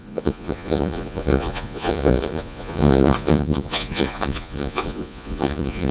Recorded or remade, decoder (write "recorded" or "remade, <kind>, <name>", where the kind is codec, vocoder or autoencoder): remade, vocoder, Vocos